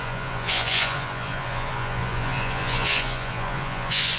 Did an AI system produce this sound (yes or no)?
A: yes